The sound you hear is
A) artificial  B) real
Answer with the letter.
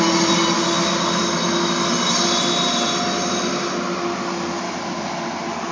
B